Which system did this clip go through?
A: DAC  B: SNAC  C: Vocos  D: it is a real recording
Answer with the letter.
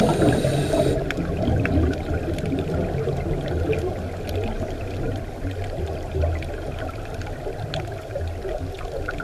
D